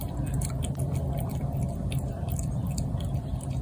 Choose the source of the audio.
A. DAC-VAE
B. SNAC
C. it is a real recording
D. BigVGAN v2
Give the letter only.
D